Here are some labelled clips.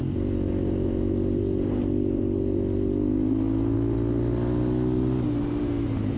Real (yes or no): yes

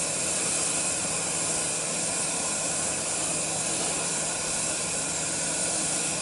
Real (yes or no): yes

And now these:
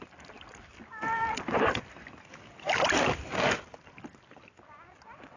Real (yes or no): yes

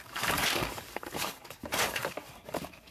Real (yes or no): no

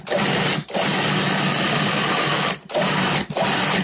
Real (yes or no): yes